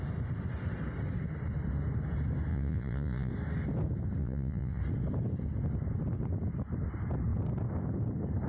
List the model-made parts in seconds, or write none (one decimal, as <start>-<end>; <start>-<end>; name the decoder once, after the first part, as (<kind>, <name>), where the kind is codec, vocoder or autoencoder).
2.5-3.3 (vocoder, Vocos); 4.2-4.8